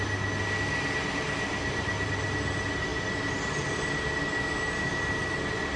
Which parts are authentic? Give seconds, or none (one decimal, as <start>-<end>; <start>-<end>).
0.0-5.8